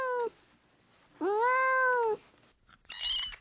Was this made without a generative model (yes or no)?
yes